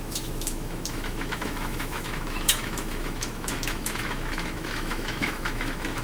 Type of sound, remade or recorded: remade